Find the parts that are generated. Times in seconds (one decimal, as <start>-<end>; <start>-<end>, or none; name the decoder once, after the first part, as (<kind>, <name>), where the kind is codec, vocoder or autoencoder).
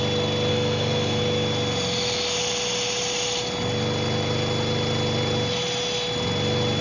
0.5-1.2 (codec, SNAC)